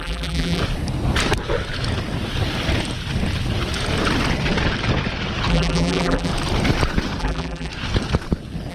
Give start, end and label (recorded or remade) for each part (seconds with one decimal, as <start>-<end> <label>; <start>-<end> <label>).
0.0-0.6 remade; 0.6-5.5 recorded; 5.5-6.3 remade; 6.3-7.2 recorded; 7.2-7.7 remade; 7.7-8.7 recorded

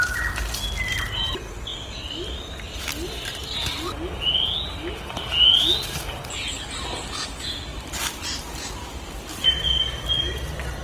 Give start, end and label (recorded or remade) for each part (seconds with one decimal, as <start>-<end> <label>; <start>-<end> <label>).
0.0-7.7 recorded; 7.7-8.4 remade; 8.4-10.8 recorded